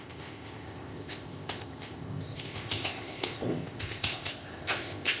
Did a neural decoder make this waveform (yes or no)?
yes